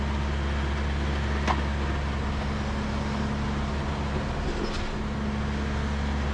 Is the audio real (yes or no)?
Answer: yes